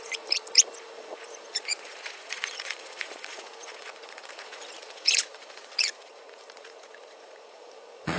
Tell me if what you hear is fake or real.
fake